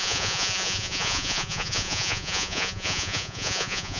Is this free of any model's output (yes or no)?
no